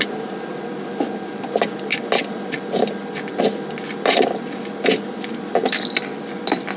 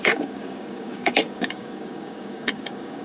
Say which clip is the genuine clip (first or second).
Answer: first